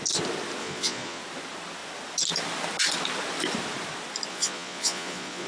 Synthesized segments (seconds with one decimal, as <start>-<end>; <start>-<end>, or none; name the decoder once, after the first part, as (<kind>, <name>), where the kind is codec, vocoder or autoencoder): 0.6-1.2 (vocoder, Vocos); 4.3-5.5